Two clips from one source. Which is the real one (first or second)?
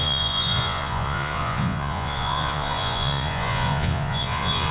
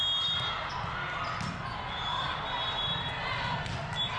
second